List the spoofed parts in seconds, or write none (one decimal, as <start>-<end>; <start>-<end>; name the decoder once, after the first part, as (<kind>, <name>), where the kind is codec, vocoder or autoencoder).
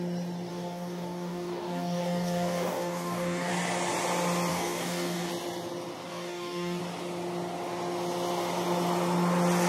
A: 0.5-3.5 (codec, DAC); 4.5-5.3; 6.1-6.8